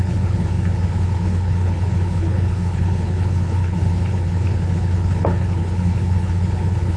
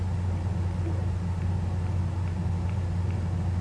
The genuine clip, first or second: second